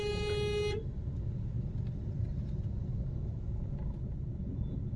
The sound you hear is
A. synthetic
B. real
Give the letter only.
B